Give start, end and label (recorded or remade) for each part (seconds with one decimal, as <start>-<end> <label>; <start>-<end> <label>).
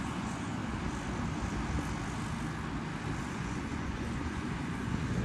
0.0-0.6 remade; 0.6-3.2 recorded; 3.2-5.2 remade